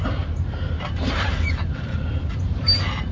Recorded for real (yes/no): no